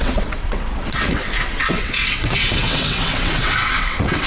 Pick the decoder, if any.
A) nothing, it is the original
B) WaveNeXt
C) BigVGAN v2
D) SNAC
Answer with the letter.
B